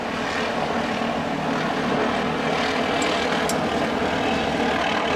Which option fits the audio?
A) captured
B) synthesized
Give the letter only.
A